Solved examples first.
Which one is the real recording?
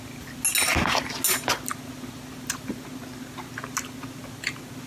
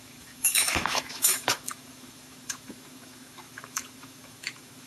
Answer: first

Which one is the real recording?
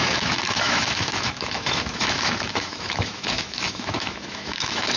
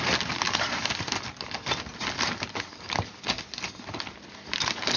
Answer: second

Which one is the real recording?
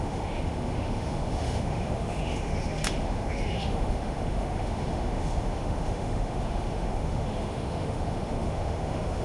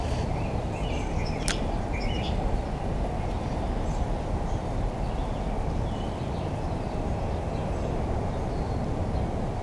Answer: second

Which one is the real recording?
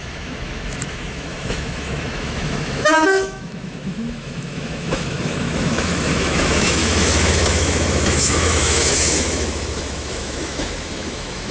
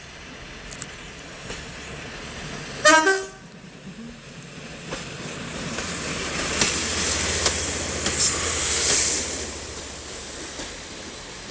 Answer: second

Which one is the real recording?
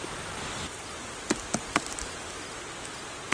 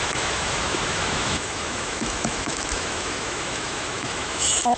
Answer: first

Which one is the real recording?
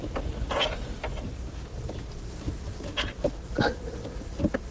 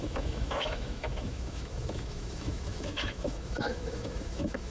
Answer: first